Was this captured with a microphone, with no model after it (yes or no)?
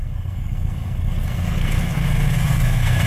no